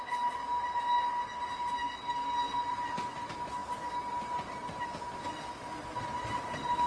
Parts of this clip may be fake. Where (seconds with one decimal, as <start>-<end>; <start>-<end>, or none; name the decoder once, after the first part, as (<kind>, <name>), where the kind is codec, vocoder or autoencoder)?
none